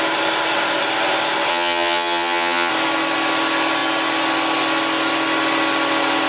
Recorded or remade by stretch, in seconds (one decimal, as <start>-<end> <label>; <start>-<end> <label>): 0.0-1.5 recorded; 1.5-2.7 remade; 2.7-6.3 recorded